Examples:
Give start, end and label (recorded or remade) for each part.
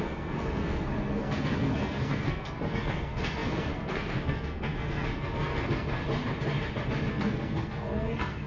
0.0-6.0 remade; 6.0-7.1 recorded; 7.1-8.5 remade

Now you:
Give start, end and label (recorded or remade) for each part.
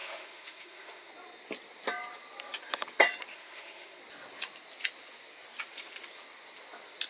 0.0-1.1 remade; 1.1-3.3 recorded; 3.3-4.0 remade; 4.0-7.1 recorded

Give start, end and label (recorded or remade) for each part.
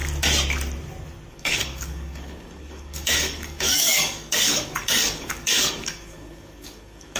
0.0-1.3 recorded; 1.3-7.2 remade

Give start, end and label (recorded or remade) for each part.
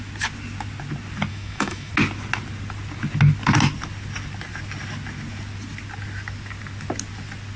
0.0-1.3 recorded; 1.3-1.9 remade; 1.9-7.6 recorded